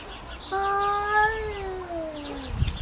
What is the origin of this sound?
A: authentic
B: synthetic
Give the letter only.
A